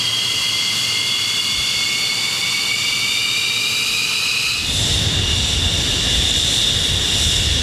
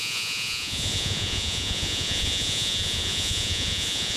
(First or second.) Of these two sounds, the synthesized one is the second